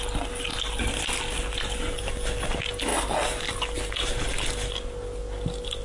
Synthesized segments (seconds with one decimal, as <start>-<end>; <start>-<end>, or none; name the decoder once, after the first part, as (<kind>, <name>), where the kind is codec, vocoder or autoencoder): none